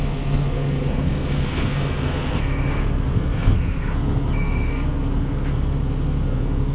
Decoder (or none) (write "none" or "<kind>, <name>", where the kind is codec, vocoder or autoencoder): codec, SNAC